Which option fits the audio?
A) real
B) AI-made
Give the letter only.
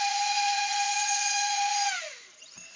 B